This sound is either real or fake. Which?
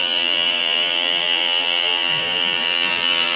fake